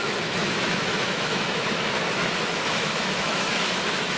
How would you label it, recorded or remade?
remade